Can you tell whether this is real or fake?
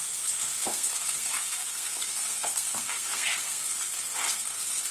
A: fake